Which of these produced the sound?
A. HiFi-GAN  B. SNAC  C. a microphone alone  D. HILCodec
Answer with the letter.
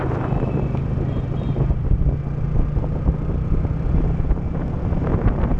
C